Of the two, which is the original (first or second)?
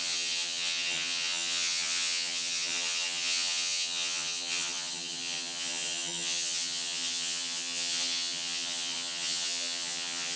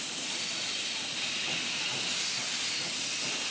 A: second